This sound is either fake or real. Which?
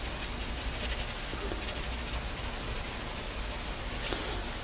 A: real